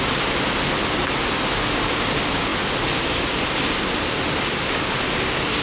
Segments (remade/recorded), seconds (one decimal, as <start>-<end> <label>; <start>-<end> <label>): 0.0-5.6 recorded